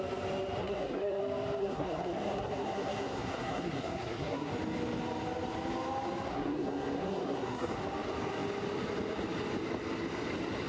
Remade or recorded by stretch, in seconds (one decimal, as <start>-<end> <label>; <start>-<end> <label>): 0.0-0.6 recorded; 0.6-1.2 remade; 1.2-1.6 recorded; 1.6-4.5 remade; 4.5-6.3 recorded; 6.3-7.8 remade; 7.8-10.7 recorded